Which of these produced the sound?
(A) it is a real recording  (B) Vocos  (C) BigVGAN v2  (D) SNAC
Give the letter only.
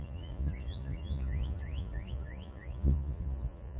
B